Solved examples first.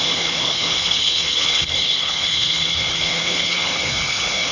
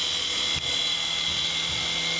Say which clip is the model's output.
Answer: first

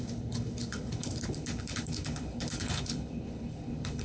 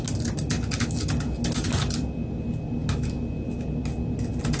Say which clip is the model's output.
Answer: first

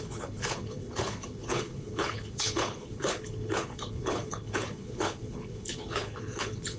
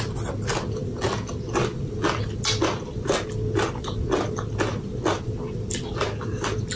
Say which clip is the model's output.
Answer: first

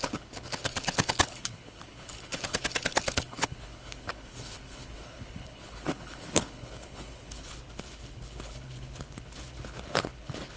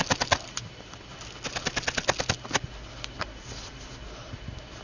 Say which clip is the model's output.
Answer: first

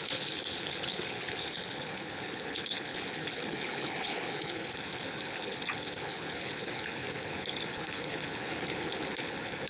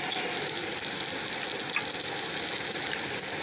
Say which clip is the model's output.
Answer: first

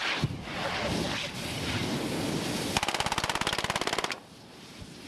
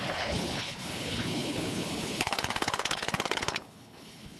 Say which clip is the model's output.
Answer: second